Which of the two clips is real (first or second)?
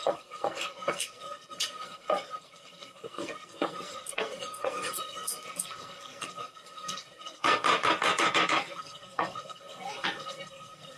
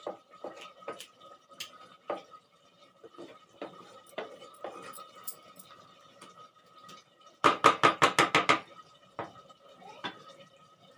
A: second